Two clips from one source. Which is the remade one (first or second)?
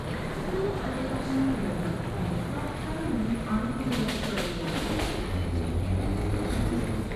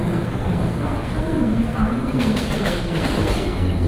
second